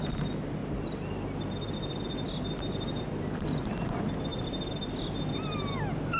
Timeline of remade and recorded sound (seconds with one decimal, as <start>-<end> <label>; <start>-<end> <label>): 0.0-0.6 recorded; 0.6-3.0 remade; 3.0-6.2 recorded